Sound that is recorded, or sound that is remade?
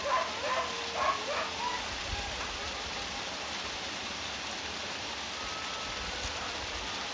recorded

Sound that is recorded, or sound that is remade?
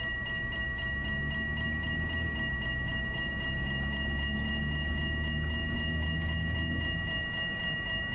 recorded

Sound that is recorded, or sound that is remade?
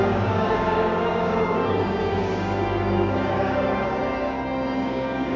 remade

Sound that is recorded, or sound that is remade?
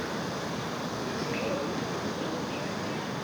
recorded